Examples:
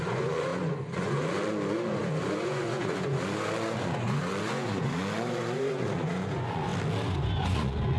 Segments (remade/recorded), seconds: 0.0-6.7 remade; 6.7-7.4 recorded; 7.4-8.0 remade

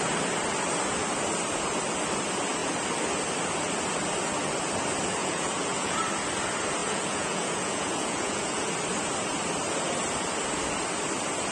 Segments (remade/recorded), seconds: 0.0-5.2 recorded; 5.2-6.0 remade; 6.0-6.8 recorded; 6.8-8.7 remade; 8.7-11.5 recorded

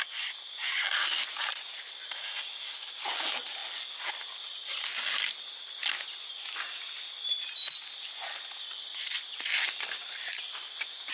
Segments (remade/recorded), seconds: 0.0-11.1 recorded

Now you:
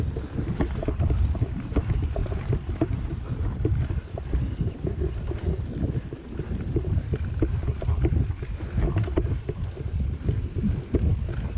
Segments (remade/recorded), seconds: 0.0-11.6 recorded

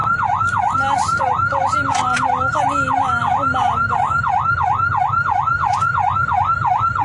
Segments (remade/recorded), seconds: 0.0-5.6 recorded; 5.6-6.4 remade; 6.4-7.0 recorded

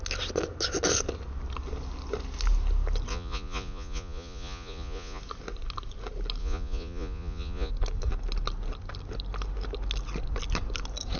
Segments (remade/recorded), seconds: 0.0-3.1 recorded; 3.1-5.2 remade; 5.2-6.4 recorded; 6.4-7.7 remade; 7.7-11.2 recorded

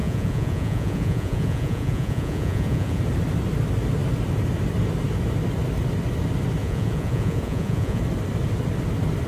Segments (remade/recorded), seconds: 0.0-3.0 remade; 3.0-6.6 recorded; 6.6-8.0 remade; 8.0-9.3 recorded